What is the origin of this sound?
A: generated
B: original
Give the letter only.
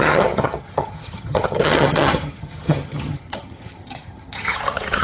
A